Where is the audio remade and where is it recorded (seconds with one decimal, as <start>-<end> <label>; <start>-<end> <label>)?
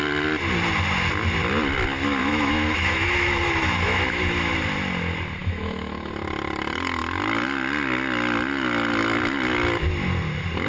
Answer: 0.0-2.2 recorded; 2.2-4.5 remade; 4.5-5.4 recorded; 5.4-6.1 remade; 6.1-10.7 recorded